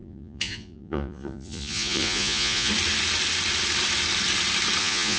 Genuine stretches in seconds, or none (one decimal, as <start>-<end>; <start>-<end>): 2.7-4.8